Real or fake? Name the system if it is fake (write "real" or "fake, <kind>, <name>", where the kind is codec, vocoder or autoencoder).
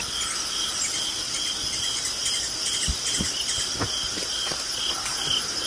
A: real